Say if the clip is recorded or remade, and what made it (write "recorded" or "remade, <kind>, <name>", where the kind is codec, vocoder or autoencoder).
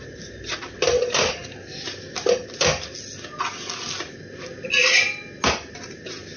recorded